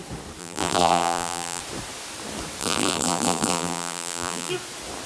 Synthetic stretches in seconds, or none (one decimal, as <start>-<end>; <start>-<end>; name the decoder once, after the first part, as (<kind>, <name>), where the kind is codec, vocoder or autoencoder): 0.4-1.6 (vocoder, BigVGAN v2); 2.6-4.5